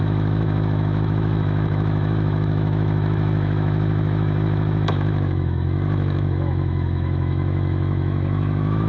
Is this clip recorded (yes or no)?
no